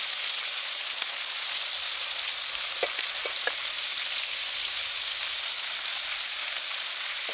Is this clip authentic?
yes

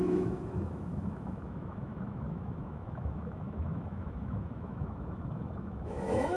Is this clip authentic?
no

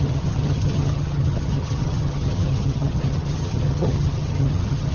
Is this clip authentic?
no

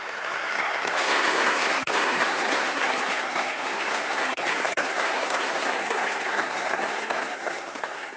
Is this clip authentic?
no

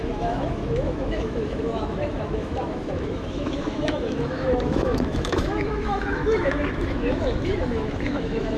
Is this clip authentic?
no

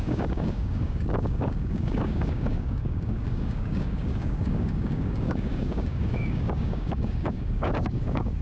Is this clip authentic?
no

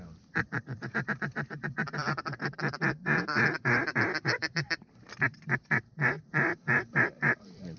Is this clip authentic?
no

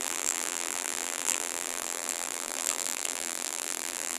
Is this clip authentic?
no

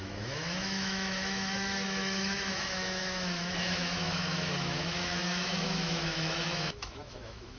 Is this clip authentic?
no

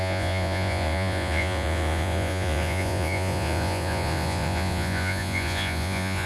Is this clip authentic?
no